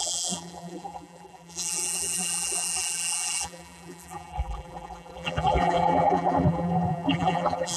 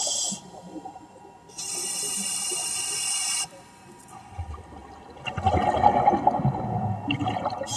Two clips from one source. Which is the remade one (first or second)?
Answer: first